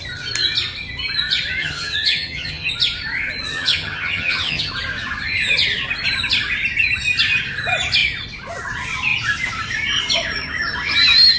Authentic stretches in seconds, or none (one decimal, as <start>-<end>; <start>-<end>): 0.0-1.6; 2.7-3.5; 4.7-11.4